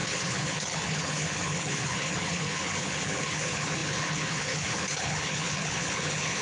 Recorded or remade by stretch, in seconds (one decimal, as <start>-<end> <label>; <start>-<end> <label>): 0.0-6.4 remade